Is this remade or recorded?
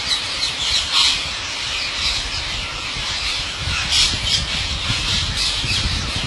remade